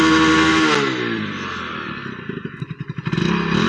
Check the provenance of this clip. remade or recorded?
recorded